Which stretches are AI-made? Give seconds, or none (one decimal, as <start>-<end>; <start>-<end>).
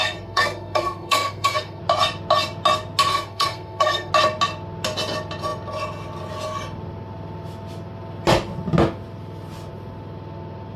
0.0-1.8; 3.1-4.1